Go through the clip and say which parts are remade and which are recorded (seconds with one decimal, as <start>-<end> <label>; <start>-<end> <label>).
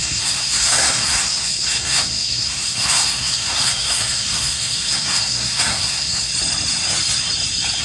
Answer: 0.0-6.3 remade; 6.3-7.8 recorded